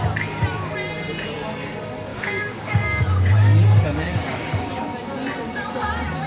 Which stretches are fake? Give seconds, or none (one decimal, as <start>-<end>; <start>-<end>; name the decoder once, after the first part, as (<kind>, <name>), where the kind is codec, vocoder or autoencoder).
2.1-4.8 (codec, DAC)